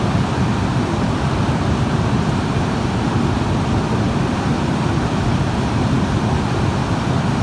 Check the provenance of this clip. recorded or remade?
remade